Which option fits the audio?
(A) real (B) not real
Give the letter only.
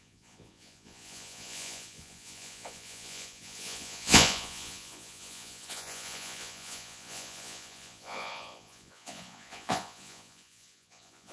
B